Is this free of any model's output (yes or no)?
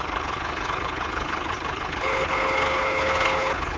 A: no